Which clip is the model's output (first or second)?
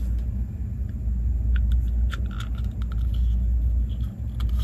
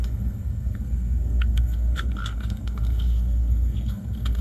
second